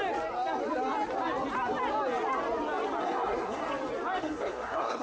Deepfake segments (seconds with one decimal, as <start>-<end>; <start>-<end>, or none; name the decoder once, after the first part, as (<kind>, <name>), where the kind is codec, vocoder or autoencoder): 3.0-3.6 (codec, SNAC); 4.2-5.0